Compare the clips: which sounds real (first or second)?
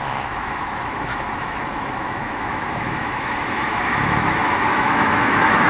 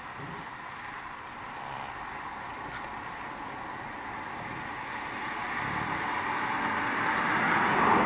second